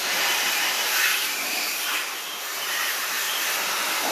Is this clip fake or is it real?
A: fake